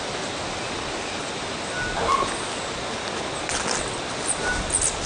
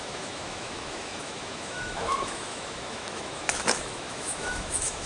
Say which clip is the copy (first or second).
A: second